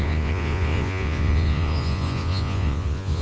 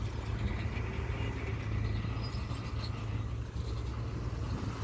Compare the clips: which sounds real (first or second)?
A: second